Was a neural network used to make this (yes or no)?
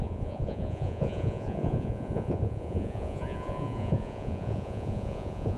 yes